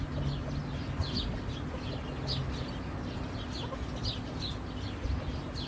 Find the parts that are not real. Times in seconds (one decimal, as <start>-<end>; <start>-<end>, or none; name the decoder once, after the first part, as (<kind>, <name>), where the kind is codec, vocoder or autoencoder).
none